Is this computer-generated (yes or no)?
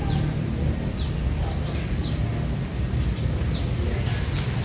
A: no